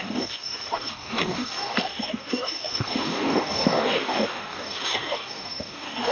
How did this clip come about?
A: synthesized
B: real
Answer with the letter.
A